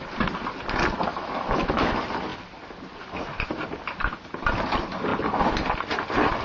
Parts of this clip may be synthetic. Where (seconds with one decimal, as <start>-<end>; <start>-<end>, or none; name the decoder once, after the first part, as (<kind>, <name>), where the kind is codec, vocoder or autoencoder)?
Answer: 1.1-1.9 (autoencoder, DAC-VAE)